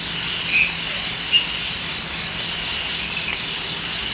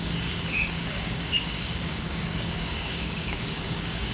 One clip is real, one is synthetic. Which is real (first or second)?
first